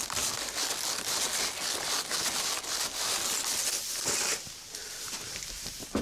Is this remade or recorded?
recorded